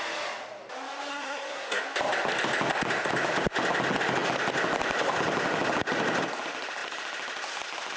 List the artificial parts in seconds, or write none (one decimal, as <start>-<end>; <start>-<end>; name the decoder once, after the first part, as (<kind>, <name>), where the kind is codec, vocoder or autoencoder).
1.1-1.8 (codec, SNAC)